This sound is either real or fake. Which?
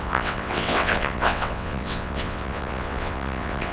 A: fake